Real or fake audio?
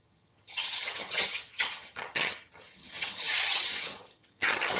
fake